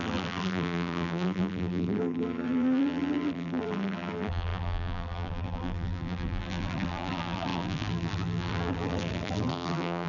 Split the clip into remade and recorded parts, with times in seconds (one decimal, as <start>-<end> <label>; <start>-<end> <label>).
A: 0.0-10.1 remade